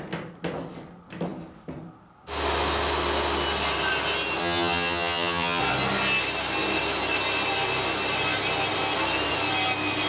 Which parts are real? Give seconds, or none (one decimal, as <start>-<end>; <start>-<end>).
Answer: 0.0-4.4; 5.6-10.1